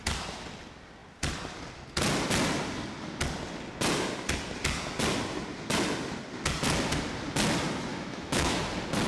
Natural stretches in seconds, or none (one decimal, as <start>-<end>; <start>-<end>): 0.0-7.9; 8.6-9.1